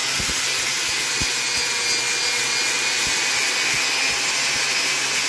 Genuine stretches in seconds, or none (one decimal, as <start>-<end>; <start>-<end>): 0.0-5.3

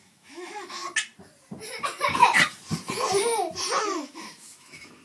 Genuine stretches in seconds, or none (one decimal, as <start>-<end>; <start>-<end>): 0.8-3.8

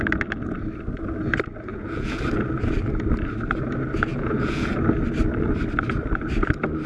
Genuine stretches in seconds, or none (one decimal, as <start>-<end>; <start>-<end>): 0.0-1.7; 2.2-4.1; 4.7-6.9

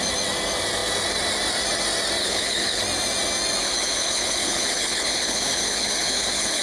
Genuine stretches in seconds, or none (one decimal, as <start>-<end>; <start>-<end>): 0.0-2.2; 2.8-3.6

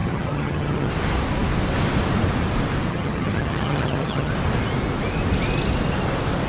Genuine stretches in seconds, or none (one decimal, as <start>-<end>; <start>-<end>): 0.9-2.9; 4.3-6.5

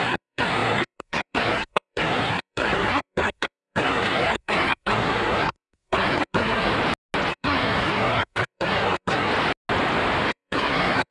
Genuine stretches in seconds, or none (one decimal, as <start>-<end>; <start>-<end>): 6.7-7.3; 9.3-10.3

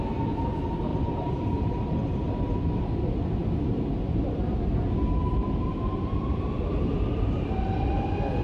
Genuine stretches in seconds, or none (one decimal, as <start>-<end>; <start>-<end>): 0.0-0.9; 2.6-3.4; 3.9-5.2; 7.6-8.4